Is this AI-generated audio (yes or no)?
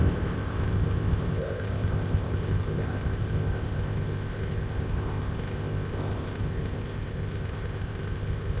yes